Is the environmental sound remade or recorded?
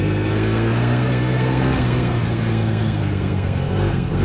remade